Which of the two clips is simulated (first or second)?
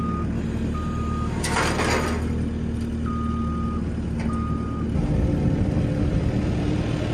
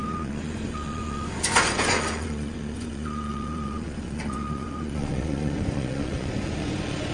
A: second